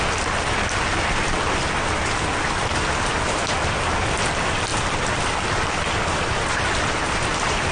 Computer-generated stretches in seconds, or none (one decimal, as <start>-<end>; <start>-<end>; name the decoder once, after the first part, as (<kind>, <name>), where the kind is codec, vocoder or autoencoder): none